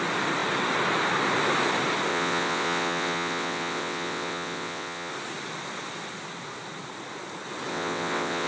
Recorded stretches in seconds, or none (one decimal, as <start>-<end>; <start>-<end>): 0.0-2.1; 5.1-7.7